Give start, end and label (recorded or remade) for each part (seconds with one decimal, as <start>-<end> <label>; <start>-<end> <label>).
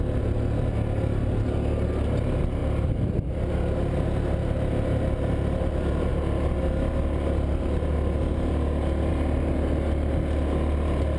0.0-11.2 recorded